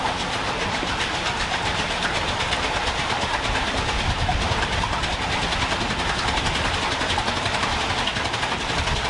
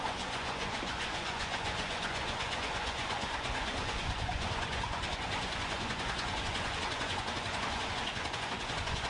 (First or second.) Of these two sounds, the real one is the first